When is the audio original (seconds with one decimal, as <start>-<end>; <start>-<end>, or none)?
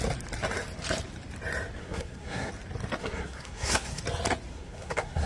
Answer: 0.0-1.8; 2.5-3.0; 4.0-4.5